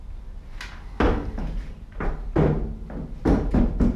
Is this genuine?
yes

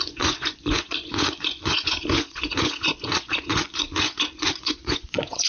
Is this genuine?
no